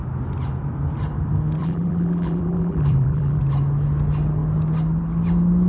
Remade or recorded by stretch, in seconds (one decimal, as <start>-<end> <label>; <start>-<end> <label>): 0.0-1.6 recorded; 1.6-3.4 remade; 3.4-5.7 recorded